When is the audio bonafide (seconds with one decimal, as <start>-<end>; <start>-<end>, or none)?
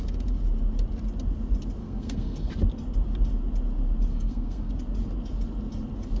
0.0-1.8; 2.5-4.1; 4.7-6.2